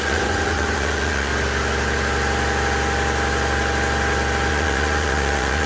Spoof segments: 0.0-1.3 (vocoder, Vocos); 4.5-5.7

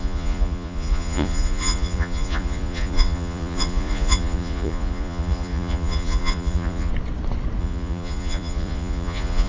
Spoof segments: 0.0-6.9 (vocoder, Vocos); 7.6-9.5

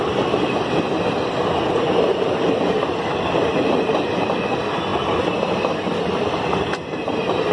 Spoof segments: none

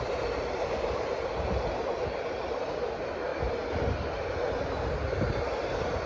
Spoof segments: none

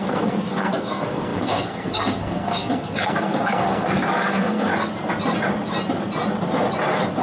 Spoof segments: 0.0-4.7 (codec, SNAC)